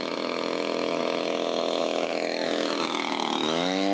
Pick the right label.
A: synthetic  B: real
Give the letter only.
A